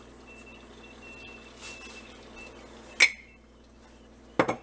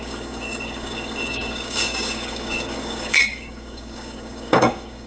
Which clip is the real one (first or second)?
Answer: first